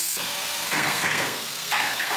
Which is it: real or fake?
fake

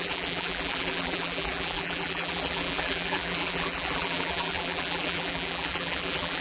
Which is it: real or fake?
fake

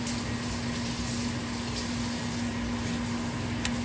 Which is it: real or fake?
real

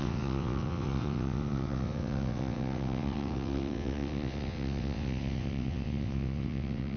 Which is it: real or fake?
fake